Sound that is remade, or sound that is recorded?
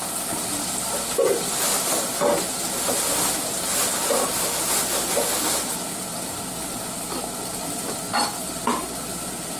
recorded